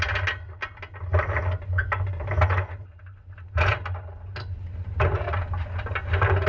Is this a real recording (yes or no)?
yes